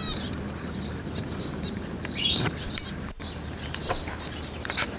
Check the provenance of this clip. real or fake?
fake